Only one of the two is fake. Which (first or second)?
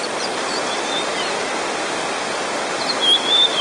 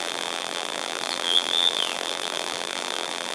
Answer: second